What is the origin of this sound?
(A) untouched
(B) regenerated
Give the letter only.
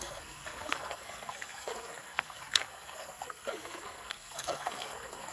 B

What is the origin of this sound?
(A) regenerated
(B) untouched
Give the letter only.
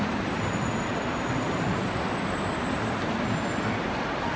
A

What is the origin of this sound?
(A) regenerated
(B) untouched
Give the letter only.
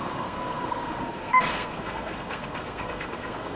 A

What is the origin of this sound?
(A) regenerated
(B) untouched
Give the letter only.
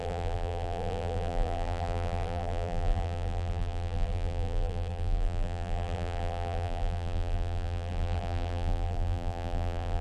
A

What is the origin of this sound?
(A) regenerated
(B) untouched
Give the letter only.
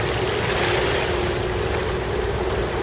B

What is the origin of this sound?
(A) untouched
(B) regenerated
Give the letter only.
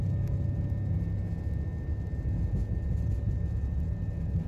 A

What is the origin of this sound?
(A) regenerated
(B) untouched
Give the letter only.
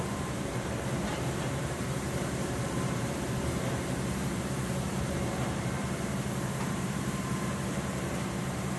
A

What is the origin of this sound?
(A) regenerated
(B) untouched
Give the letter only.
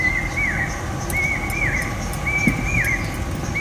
B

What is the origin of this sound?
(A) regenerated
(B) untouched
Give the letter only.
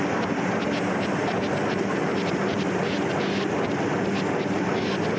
B